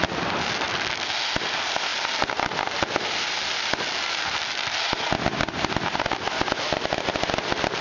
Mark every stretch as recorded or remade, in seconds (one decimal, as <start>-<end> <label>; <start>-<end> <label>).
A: 0.0-7.8 recorded